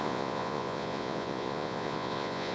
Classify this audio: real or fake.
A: fake